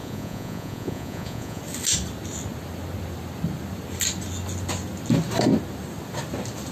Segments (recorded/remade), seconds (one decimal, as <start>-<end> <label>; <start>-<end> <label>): 0.0-1.6 remade; 1.6-6.7 recorded